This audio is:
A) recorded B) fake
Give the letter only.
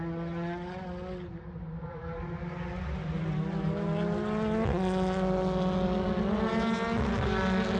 A